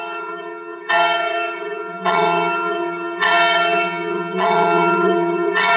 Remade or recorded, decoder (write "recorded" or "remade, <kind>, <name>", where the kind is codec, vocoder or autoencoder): remade, vocoder, HiFi-GAN